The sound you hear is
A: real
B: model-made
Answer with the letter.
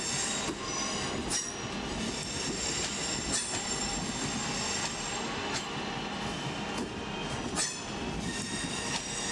A